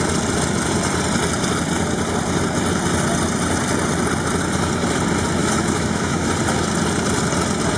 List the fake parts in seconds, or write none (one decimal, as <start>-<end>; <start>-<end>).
5.4-6.3